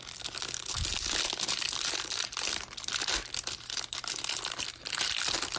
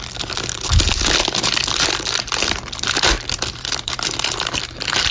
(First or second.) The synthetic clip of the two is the second